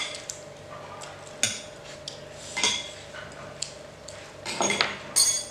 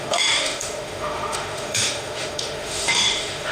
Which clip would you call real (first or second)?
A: first